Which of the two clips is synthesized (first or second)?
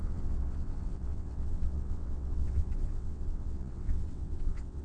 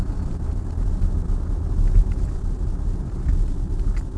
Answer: first